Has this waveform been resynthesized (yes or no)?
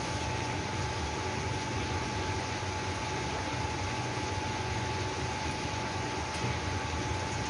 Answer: yes